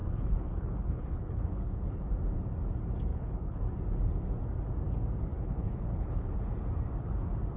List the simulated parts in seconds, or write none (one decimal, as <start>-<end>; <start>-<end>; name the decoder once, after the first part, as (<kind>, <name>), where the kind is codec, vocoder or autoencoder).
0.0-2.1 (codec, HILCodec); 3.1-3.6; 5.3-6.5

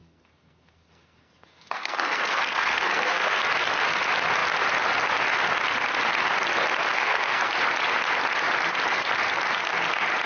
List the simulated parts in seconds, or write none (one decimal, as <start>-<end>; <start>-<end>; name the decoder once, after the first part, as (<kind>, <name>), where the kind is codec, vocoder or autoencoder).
0.0-3.4 (codec, SNAC); 6.9-7.5

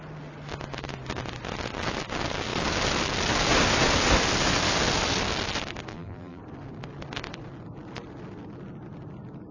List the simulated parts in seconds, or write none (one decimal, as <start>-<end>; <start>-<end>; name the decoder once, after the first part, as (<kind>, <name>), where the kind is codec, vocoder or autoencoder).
5.9-6.4 (vocoder, BigVGAN v2)

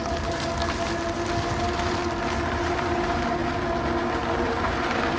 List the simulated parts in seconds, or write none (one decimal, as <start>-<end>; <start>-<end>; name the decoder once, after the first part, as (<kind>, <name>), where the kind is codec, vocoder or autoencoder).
0.0-0.5 (vocoder, BigVGAN v2); 1.6-2.0; 2.5-3.4; 4.2-5.2

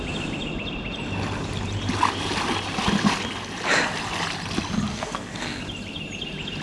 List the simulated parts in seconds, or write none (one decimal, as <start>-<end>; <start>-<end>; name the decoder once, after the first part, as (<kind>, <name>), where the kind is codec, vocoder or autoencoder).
4.9-5.6 (codec, SNAC)